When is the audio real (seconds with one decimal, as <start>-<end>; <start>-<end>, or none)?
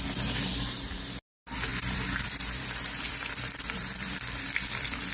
0.0-1.7